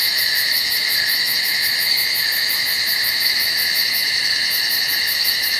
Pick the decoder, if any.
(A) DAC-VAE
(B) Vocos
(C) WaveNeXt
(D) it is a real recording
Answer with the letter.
A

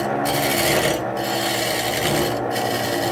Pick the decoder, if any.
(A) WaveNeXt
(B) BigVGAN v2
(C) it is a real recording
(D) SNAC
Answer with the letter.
C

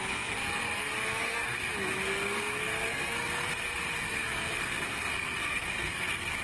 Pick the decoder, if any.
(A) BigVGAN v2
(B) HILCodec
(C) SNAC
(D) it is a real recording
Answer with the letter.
C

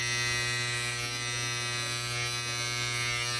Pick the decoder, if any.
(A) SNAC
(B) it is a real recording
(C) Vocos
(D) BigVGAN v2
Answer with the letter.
B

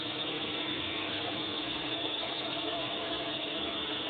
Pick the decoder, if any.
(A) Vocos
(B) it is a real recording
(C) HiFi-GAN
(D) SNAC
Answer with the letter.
D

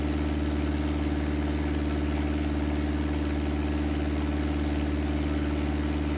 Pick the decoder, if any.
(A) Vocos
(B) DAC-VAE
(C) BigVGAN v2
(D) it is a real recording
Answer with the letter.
D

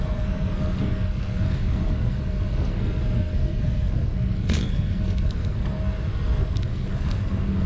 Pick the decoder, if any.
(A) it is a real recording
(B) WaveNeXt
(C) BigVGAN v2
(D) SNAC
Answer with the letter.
D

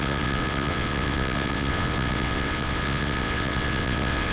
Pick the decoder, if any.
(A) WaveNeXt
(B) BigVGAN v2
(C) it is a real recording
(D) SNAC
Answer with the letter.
A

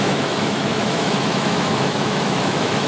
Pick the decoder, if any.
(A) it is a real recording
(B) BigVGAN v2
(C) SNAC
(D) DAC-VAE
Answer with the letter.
D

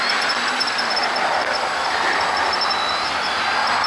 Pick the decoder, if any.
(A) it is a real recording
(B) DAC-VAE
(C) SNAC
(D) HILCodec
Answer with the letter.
A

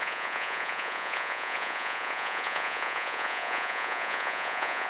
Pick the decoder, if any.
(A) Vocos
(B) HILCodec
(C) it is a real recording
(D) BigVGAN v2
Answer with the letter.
A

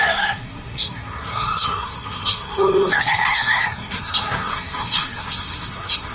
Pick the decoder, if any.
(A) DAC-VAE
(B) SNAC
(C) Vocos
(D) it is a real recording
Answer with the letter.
B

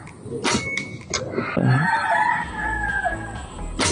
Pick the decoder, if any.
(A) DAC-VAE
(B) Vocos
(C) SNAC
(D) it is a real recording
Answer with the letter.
D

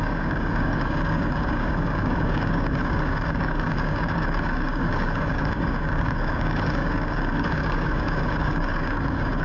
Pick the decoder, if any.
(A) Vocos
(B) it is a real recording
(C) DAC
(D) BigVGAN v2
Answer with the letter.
C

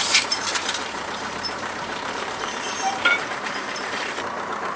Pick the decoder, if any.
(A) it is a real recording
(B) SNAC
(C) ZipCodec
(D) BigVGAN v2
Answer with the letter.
D